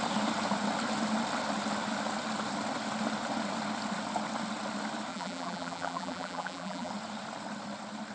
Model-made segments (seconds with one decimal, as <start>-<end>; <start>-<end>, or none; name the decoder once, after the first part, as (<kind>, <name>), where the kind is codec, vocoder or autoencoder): 5.1-6.9 (vocoder, BigVGAN v2)

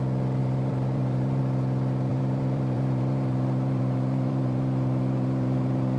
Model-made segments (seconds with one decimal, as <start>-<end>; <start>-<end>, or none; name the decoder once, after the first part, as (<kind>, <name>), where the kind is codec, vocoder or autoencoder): 0.4-1.4 (vocoder, BigVGAN v2); 2.1-6.0

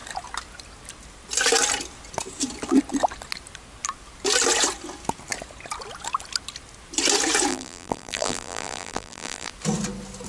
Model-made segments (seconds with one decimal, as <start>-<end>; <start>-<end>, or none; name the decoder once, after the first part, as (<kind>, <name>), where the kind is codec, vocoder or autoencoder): 7.5-9.5 (vocoder, BigVGAN v2)

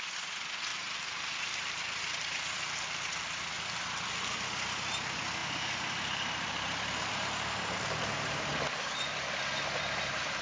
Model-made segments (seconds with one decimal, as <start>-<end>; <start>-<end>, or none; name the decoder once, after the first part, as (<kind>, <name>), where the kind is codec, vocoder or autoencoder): 0.7-1.8 (vocoder, BigVGAN v2); 5.4-8.5

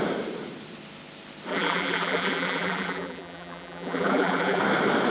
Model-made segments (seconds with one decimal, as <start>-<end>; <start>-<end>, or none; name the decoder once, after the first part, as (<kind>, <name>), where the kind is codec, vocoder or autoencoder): 1.5-4.6 (vocoder, BigVGAN v2)